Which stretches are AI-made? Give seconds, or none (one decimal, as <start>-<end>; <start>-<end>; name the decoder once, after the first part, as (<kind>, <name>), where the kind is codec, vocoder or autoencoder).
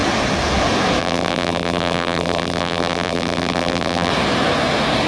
1.0-4.1 (vocoder, BigVGAN v2)